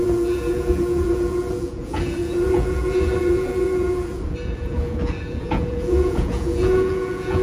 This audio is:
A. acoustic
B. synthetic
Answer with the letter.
B